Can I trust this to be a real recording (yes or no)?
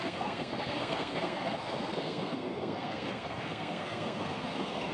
no